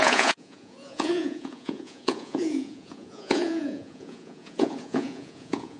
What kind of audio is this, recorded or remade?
remade